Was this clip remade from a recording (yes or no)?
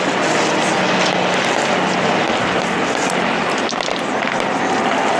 no